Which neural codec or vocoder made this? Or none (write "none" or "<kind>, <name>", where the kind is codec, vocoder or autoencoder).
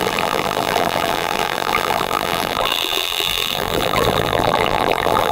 vocoder, BigVGAN v2